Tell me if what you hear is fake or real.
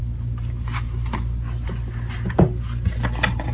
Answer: real